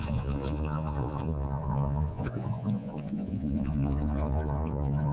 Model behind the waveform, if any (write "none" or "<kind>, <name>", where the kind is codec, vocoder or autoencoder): vocoder, Vocos